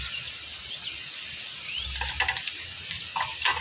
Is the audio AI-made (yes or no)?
no